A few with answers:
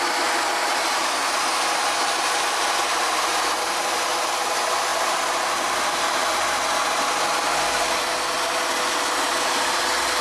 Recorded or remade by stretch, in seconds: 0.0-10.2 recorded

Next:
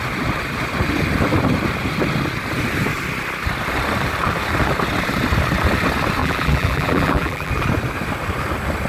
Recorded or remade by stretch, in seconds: 0.0-6.2 recorded; 6.2-7.5 remade; 7.5-8.9 recorded

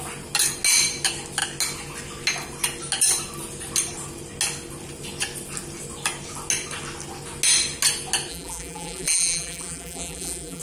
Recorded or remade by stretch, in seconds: 0.0-8.3 recorded; 8.3-10.6 remade

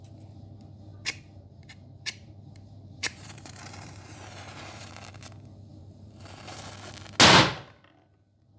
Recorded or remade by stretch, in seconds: 0.0-0.9 recorded; 0.9-4.9 remade; 4.9-5.7 recorded; 5.7-6.7 remade; 6.7-8.6 recorded

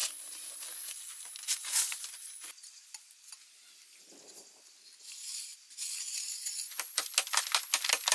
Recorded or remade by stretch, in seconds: 0.0-1.8 remade; 1.8-8.1 recorded

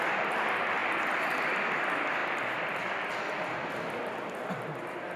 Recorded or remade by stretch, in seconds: 0.0-0.8 recorded; 0.8-1.4 remade; 1.4-2.2 recorded; 2.2-3.1 remade; 3.1-5.2 recorded